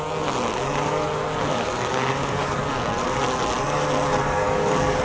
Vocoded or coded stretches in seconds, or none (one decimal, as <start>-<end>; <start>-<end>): 1.5-2.6; 4.1-5.0